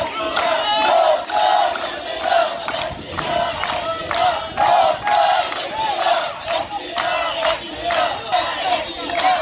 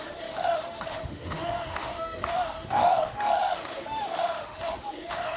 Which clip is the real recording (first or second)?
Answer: first